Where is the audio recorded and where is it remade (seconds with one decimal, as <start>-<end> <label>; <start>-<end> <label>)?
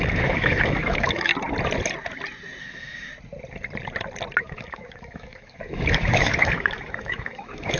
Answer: 0.0-1.3 remade; 1.3-2.6 recorded; 2.6-3.1 remade; 3.1-4.4 recorded; 4.4-7.8 remade